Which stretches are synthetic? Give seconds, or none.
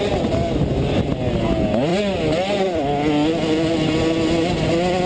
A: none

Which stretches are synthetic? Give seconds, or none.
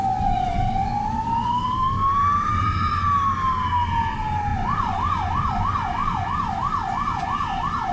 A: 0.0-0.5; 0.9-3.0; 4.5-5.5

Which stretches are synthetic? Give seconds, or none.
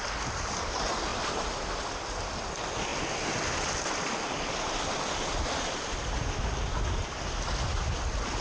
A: 1.1-2.3; 2.9-7.9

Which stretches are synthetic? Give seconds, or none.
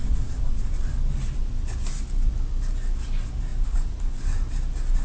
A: 0.0-0.9; 3.5-4.5